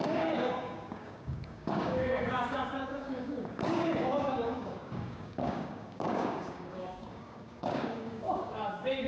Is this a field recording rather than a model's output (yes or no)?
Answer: no